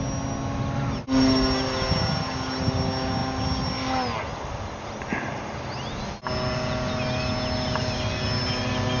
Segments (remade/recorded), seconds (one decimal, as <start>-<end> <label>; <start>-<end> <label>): 0.0-9.0 recorded